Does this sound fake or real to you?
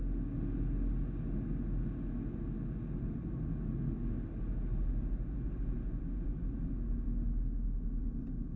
real